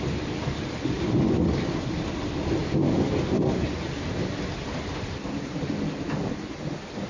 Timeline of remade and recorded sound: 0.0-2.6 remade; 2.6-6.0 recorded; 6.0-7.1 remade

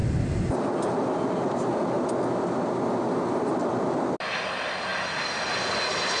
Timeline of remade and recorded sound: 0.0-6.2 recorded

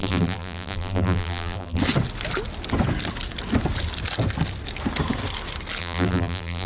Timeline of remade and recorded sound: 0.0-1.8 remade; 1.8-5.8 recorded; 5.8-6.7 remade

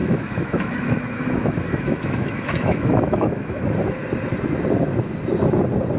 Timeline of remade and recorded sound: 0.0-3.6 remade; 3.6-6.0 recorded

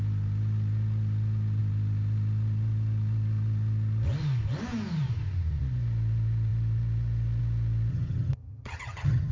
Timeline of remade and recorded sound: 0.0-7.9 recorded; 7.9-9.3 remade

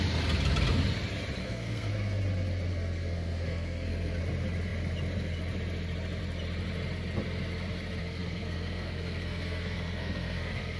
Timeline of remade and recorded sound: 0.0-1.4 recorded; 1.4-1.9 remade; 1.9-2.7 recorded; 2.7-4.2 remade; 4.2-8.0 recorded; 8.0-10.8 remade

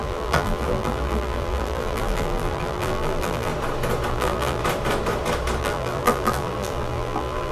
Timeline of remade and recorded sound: 0.0-3.5 remade; 3.5-4.1 recorded; 4.1-4.6 remade; 4.6-5.6 recorded; 5.6-7.5 remade

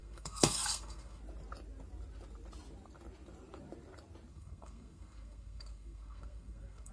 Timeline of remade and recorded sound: 0.0-1.2 remade; 1.2-4.3 recorded; 4.3-6.9 remade